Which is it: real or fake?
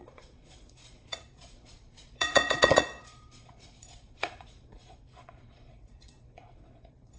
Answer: fake